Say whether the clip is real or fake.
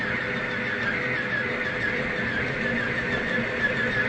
real